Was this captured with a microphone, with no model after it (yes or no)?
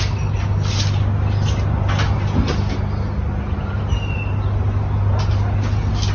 yes